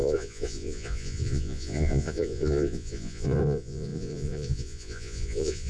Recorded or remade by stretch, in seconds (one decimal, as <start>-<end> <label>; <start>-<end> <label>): 0.0-5.7 remade